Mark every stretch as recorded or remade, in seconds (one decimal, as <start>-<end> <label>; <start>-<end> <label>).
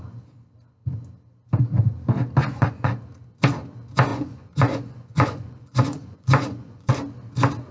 0.0-2.4 recorded; 2.4-3.0 remade; 3.0-4.1 recorded; 4.1-6.9 remade; 6.9-7.7 recorded